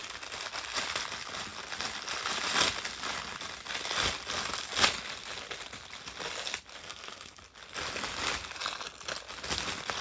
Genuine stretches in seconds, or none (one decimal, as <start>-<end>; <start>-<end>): 0.0-6.8; 7.4-10.0